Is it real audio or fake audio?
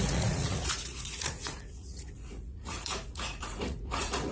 fake